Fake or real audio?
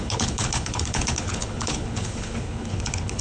fake